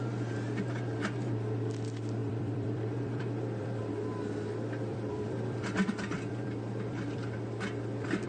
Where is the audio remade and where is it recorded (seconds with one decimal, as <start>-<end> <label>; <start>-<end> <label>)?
0.0-2.2 recorded; 2.2-3.8 remade; 3.8-4.9 recorded; 4.9-8.3 remade